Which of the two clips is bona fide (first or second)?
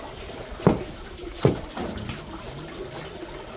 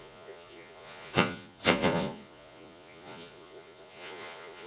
first